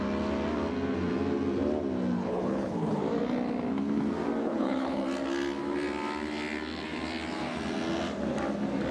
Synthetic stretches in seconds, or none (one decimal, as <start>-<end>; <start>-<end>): 2.2-3.0; 4.4-5.0